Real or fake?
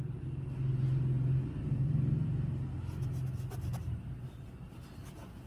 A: real